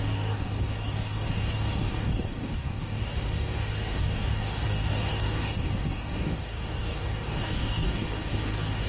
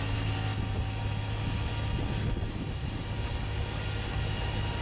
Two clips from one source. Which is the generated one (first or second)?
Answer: first